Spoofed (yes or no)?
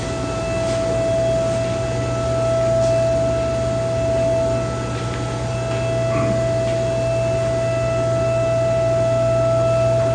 no